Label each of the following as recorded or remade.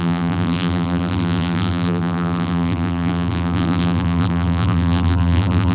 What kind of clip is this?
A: remade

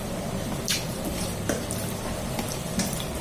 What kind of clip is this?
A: remade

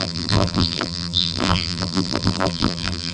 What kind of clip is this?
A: remade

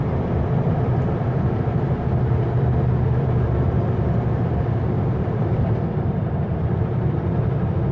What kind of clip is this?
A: remade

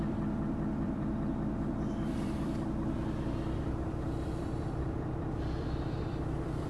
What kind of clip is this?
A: remade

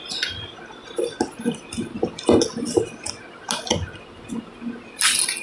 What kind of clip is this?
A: recorded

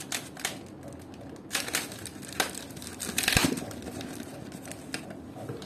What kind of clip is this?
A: recorded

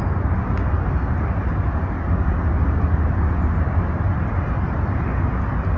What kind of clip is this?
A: recorded